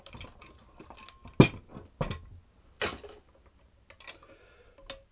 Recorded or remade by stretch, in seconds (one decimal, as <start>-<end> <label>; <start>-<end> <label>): 0.0-5.1 recorded